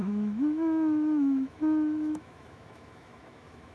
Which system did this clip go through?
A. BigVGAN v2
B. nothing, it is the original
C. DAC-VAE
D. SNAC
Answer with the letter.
C